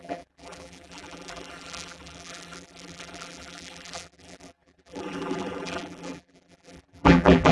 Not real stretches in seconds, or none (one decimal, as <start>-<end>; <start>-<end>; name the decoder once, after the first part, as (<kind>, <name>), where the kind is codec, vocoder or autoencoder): 0.0-7.5 (vocoder, BigVGAN v2)